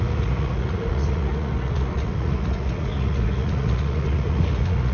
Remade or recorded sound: remade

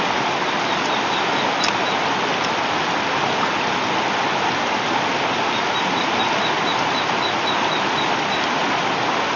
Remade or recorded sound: recorded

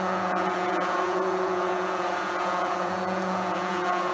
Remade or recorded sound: remade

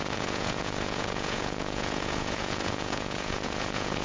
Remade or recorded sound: remade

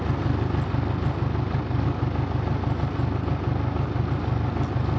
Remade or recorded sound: recorded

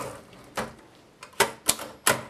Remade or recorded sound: recorded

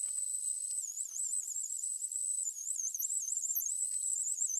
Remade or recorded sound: remade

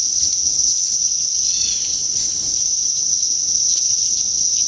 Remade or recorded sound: remade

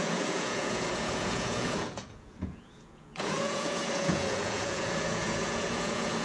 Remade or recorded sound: remade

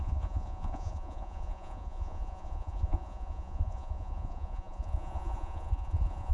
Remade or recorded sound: remade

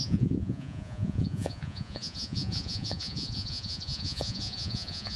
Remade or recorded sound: remade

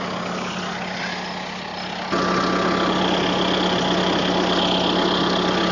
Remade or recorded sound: recorded